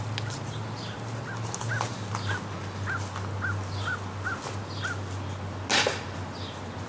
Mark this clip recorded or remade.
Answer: recorded